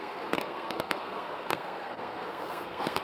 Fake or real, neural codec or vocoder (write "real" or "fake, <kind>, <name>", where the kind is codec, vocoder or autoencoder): fake, codec, SNAC